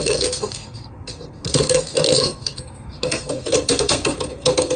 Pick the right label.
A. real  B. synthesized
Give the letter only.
B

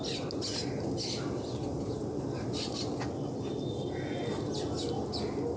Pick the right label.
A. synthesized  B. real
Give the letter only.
B